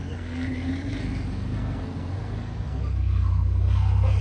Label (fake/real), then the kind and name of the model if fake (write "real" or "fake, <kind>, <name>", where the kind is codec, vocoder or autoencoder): fake, codec, SNAC